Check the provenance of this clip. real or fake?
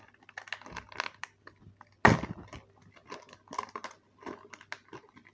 real